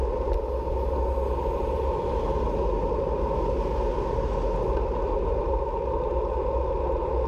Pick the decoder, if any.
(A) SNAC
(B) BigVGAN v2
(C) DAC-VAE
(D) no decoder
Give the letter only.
D